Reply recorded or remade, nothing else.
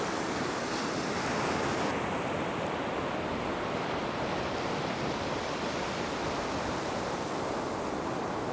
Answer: recorded